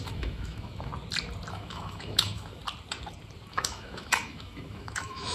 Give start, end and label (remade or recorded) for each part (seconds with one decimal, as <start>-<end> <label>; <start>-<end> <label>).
0.0-0.9 remade; 0.9-1.5 recorded; 1.5-2.6 remade; 2.6-3.5 recorded; 3.5-5.3 remade

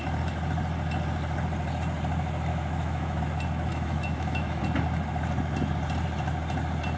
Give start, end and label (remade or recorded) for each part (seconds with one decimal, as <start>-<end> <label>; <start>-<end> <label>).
0.0-2.5 recorded; 2.5-3.2 remade; 3.2-3.7 recorded; 3.7-4.6 remade; 4.6-7.0 recorded

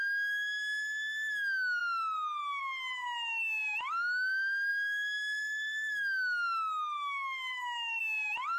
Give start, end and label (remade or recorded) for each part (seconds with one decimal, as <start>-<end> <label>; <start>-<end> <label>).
0.0-4.7 recorded; 4.7-8.0 remade; 8.0-8.6 recorded

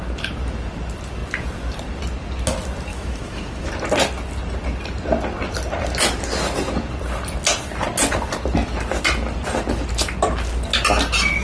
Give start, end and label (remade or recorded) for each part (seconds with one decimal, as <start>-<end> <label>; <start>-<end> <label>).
0.0-2.9 recorded; 2.9-3.7 remade; 3.7-11.4 recorded

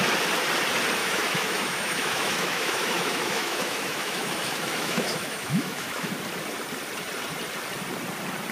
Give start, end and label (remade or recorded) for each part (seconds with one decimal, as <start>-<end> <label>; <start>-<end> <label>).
0.0-1.0 recorded; 1.0-6.1 remade; 6.1-8.5 recorded